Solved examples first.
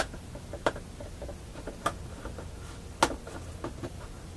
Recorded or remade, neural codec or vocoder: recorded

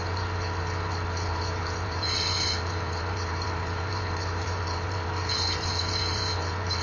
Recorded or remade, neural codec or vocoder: remade, vocoder, BigVGAN v2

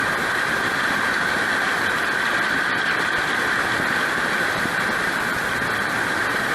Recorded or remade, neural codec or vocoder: recorded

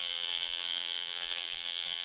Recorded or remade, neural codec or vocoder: remade, vocoder, BigVGAN v2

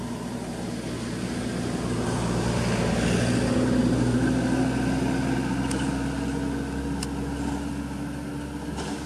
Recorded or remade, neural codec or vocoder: recorded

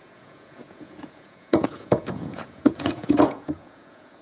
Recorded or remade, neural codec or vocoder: remade, vocoder, Vocos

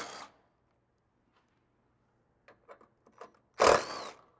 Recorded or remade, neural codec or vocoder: recorded